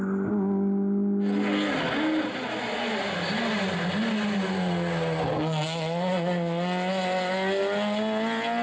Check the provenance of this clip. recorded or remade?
recorded